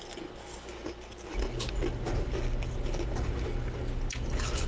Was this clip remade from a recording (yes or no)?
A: no